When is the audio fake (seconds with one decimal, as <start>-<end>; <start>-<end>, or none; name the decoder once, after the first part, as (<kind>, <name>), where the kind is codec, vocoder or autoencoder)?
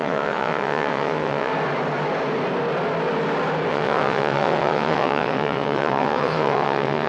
0.0-1.5 (vocoder, WaveNeXt); 3.7-7.1